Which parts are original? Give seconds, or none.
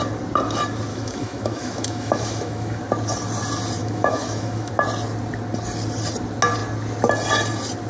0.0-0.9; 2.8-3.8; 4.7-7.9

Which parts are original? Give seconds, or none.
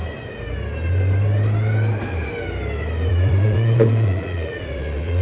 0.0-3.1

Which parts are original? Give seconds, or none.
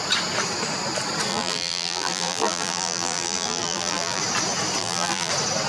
0.0-1.3; 4.2-4.8; 5.3-5.7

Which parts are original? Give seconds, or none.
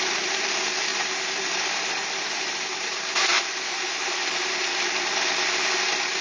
0.0-0.9; 4.6-6.2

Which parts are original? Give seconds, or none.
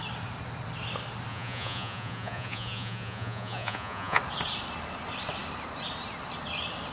0.0-1.3; 4.2-6.9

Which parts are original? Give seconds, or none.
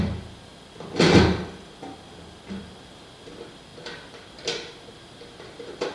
0.5-2.6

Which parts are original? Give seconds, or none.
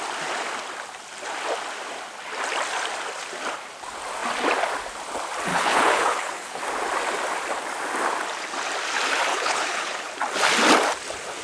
0.0-5.5; 6.6-9.3; 10.1-11.4